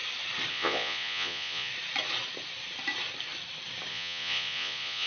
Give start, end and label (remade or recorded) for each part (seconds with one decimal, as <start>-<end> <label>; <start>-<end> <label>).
0.0-0.5 recorded; 0.5-1.7 remade; 1.7-3.9 recorded; 3.9-5.1 remade